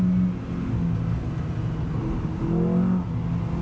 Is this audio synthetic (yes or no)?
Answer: no